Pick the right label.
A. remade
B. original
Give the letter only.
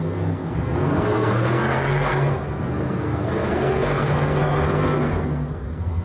A